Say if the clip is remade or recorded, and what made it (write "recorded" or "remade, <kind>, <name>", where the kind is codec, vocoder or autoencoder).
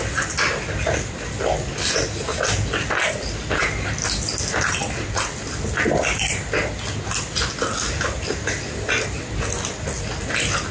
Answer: recorded